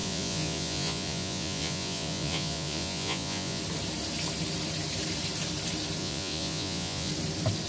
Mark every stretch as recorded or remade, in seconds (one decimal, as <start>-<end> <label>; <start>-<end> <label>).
0.0-3.6 remade; 3.6-6.0 recorded; 6.0-7.1 remade; 7.1-7.7 recorded